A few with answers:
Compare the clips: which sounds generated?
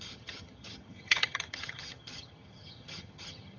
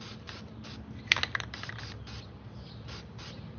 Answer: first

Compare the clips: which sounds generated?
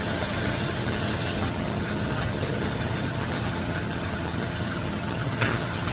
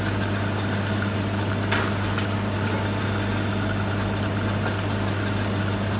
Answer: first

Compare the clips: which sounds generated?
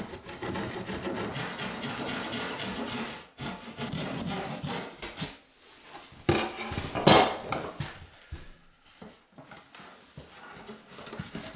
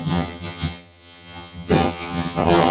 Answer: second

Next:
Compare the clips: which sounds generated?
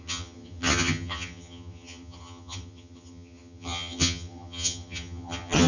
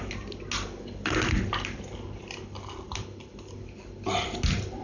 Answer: first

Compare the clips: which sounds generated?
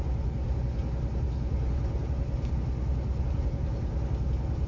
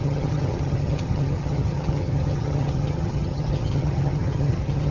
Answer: second